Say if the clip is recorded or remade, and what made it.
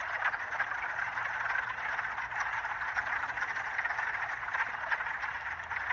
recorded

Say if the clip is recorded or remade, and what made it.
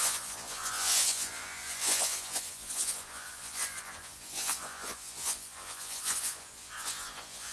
remade, vocoder, Vocos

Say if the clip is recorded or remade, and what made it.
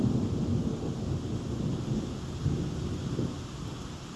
recorded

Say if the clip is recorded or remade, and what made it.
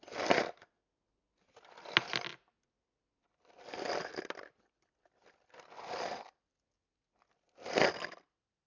recorded